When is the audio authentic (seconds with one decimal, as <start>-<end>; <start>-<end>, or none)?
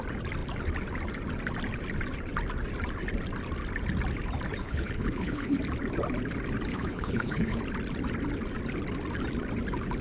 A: 0.0-4.6; 5.6-6.7; 7.6-10.0